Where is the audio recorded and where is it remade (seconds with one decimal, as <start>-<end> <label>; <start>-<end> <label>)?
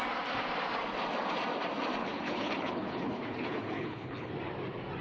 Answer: 0.0-2.0 recorded; 2.0-4.3 remade; 4.3-5.0 recorded